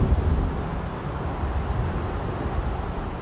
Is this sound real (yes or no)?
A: yes